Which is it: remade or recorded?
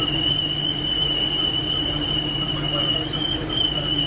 remade